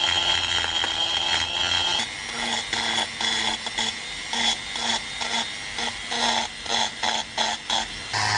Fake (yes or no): no